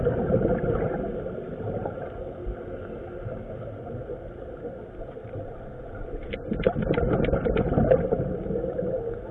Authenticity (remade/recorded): recorded